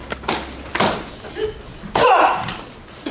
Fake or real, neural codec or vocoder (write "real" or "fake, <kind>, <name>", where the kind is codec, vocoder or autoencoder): real